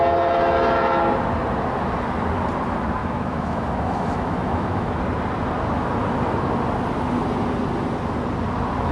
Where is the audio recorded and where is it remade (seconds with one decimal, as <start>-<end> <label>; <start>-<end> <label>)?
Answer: 0.0-3.0 recorded; 3.0-5.0 remade; 5.0-8.9 recorded